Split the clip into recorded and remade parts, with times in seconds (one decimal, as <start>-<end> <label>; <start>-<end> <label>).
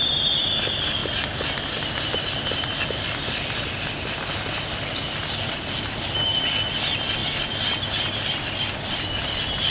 0.0-9.7 recorded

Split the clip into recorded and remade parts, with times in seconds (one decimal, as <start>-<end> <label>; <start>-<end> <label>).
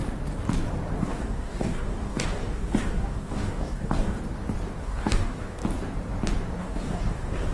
0.0-1.0 recorded; 1.0-4.2 remade; 4.2-4.8 recorded; 4.8-5.6 remade; 5.6-6.6 recorded; 6.6-7.5 remade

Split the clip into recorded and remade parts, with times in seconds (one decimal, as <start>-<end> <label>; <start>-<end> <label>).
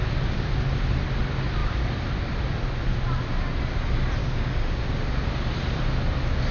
0.0-4.2 recorded; 4.2-4.8 remade; 4.8-6.5 recorded